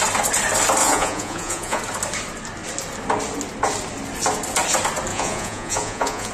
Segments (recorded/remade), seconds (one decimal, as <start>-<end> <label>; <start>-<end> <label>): 0.0-0.8 recorded; 0.8-1.8 remade; 1.8-5.1 recorded; 5.1-6.3 remade